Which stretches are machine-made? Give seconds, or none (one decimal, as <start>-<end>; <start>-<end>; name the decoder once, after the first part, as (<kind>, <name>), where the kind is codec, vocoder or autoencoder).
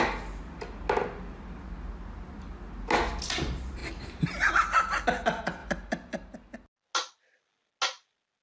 none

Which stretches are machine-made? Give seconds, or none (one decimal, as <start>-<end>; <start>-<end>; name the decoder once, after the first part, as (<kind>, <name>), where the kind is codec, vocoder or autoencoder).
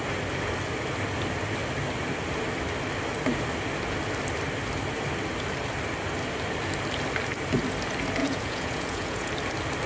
8.2-9.3 (vocoder, Vocos)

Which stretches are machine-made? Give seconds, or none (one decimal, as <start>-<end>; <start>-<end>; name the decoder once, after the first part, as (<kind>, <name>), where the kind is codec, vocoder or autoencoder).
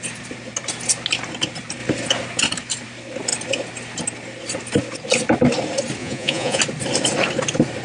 6.0-6.6 (vocoder, Vocos)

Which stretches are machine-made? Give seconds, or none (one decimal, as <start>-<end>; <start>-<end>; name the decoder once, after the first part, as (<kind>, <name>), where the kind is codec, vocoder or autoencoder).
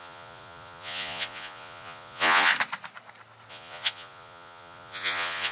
0.0-2.5 (vocoder, Vocos); 3.5-5.5